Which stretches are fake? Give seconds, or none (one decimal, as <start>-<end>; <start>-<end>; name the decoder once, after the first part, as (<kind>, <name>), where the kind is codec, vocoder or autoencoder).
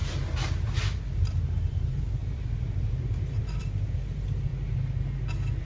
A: 0.0-4.5 (vocoder, BigVGAN v2)